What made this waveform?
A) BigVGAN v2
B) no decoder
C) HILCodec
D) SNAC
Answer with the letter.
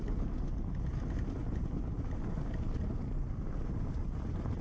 B